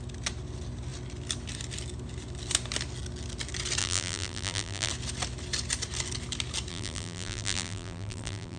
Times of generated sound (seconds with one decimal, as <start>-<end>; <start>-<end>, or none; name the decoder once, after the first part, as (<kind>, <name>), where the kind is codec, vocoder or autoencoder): 3.8-4.9 (vocoder, BigVGAN v2); 6.7-8.6

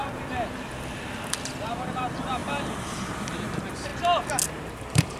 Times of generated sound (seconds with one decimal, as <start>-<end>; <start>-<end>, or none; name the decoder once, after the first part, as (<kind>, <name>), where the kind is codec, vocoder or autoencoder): 1.7-2.4 (vocoder, BigVGAN v2); 3.1-3.9; 4.5-5.2